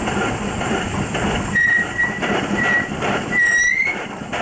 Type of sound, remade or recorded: remade